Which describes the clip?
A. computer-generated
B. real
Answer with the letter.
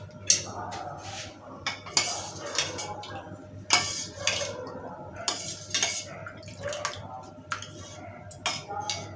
B